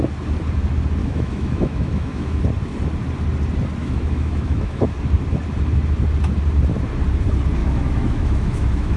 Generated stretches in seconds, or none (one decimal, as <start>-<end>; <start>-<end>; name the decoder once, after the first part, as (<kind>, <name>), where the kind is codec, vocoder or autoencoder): 1.0-2.4 (autoencoder, DAC-VAE); 3.8-4.9; 7.6-9.0